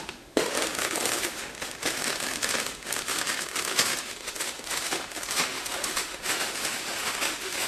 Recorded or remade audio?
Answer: remade